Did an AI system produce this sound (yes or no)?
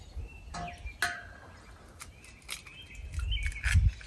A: no